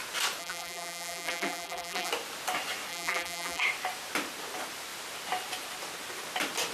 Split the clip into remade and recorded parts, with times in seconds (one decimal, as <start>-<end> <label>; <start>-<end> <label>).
0.0-0.4 recorded; 0.4-2.1 remade; 2.1-2.9 recorded; 2.9-3.6 remade; 3.6-6.7 recorded